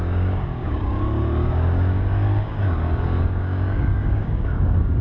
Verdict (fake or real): fake